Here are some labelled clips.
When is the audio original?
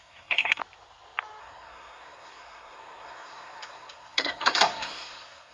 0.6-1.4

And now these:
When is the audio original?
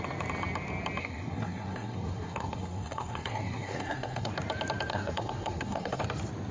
0.0-1.0; 4.3-4.9; 6.0-6.5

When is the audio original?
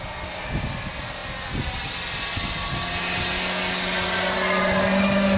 0.0-5.4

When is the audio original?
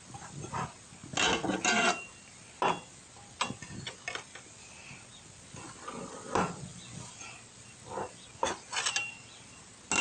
0.0-10.0